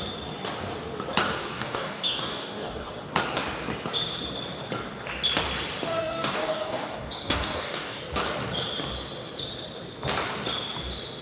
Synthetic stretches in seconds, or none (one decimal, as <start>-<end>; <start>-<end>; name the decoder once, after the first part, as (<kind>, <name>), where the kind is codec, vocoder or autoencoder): 1.4-2.9 (codec, DAC); 6.0-8.0